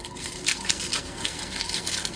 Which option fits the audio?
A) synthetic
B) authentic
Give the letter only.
A